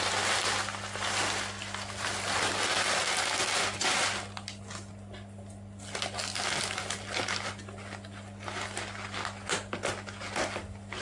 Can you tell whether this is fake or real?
real